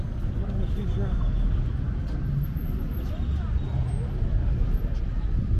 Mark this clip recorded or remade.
recorded